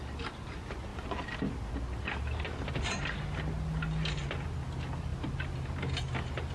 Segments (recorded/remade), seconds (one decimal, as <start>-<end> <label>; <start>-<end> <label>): 0.0-6.5 recorded